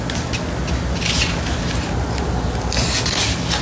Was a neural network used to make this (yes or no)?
no